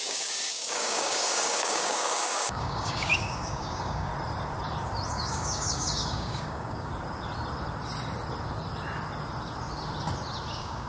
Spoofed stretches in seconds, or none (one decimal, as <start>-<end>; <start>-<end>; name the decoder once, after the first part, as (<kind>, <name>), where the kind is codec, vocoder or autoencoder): 0.0-4.1 (codec, DAC); 5.1-6.9; 10.5-10.9